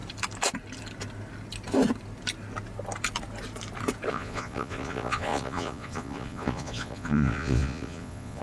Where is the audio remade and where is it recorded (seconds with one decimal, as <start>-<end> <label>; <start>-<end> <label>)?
0.0-4.1 recorded; 4.1-8.4 remade

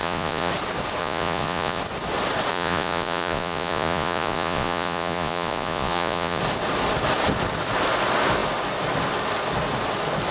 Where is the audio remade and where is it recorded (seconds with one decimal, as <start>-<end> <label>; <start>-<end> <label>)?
0.0-0.5 remade; 0.5-1.0 recorded; 1.0-1.8 remade; 1.8-2.5 recorded; 2.5-6.4 remade; 6.4-10.3 recorded

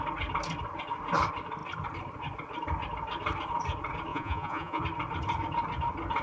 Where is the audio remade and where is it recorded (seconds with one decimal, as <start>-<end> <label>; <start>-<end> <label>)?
0.0-4.1 recorded; 4.1-4.8 remade; 4.8-6.2 recorded

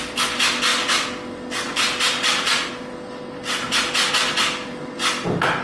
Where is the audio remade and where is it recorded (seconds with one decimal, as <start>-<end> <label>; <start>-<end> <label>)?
0.0-5.6 recorded

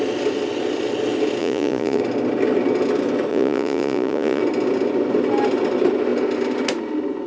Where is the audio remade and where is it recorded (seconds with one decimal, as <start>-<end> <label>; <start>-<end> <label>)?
0.0-1.4 recorded; 1.4-2.0 remade; 2.0-3.3 recorded; 3.3-4.4 remade; 4.4-7.3 recorded

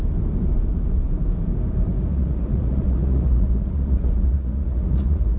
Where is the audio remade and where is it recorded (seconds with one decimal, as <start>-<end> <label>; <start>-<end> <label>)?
0.0-2.1 recorded; 2.1-5.4 remade